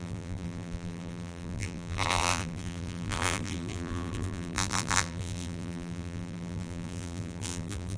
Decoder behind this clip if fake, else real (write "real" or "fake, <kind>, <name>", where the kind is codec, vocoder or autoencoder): fake, vocoder, BigVGAN v2